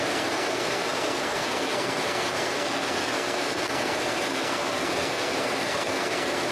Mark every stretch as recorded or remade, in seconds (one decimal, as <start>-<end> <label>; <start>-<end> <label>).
0.0-6.5 remade